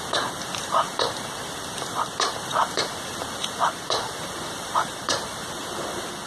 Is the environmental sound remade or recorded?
remade